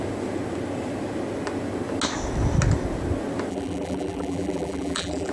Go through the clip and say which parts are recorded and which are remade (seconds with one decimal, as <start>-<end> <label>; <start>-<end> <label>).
0.0-3.5 recorded; 3.5-5.3 remade